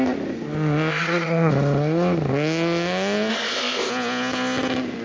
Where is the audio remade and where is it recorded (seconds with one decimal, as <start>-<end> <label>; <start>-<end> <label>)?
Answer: 0.0-0.9 recorded; 0.9-1.5 remade; 1.5-3.3 recorded; 3.3-3.9 remade; 3.9-5.0 recorded